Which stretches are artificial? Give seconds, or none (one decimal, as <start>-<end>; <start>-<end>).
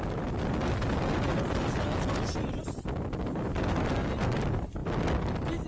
none